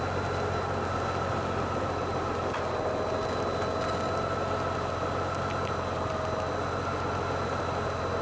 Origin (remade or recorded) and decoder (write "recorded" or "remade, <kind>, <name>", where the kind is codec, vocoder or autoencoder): recorded